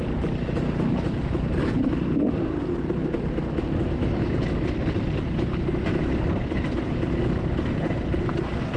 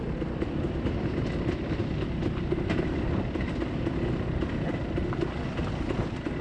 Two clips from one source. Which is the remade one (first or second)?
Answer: second